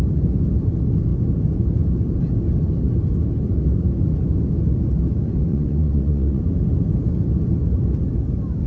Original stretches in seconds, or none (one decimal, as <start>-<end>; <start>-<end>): 0.0-5.5; 6.4-8.7